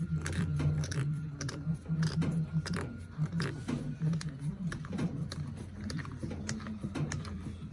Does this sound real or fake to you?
fake